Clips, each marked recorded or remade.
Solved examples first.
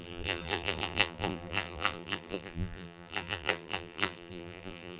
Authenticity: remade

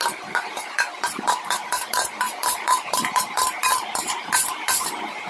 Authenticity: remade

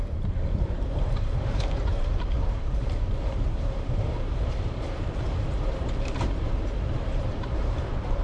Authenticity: remade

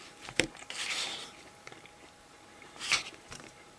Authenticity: remade